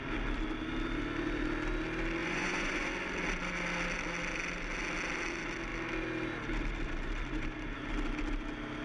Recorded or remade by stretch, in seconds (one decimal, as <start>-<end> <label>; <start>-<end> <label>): 0.0-2.2 recorded; 2.2-2.9 remade; 2.9-8.8 recorded

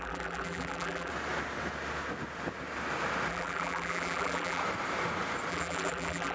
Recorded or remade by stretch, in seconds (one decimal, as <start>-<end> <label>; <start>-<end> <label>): 0.0-1.1 remade; 1.1-3.3 recorded; 3.3-4.6 remade; 4.6-5.5 recorded; 5.5-6.3 remade

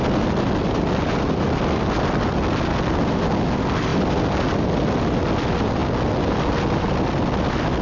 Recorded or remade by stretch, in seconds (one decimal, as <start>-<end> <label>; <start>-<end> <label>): 0.0-7.8 recorded

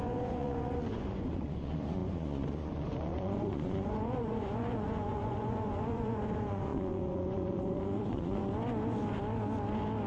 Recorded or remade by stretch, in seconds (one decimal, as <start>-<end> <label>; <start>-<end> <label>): 0.0-8.4 remade; 8.4-10.1 recorded